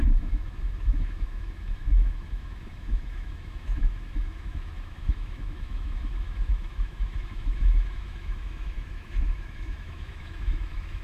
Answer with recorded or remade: remade